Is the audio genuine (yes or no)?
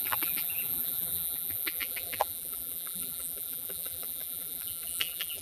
no